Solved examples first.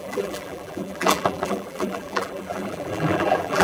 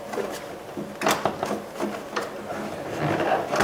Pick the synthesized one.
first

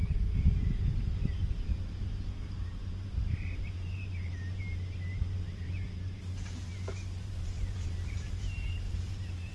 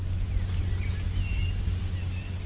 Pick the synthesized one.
first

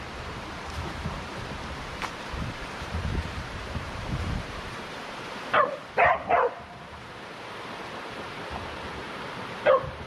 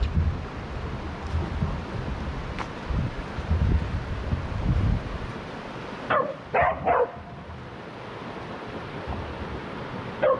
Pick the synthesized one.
first